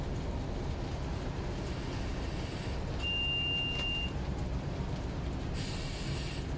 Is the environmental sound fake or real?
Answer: real